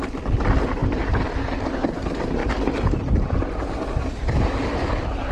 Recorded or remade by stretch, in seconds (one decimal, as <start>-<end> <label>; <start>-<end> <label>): 0.0-0.8 recorded; 0.8-1.5 remade; 1.5-5.3 recorded